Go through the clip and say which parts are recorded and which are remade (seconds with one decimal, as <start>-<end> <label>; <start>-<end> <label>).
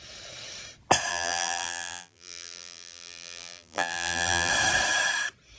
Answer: 0.0-1.1 recorded; 1.1-4.5 remade; 4.5-5.6 recorded